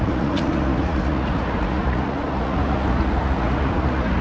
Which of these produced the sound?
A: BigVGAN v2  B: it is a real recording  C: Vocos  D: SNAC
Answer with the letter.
C